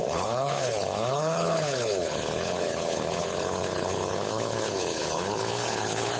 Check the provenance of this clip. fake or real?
fake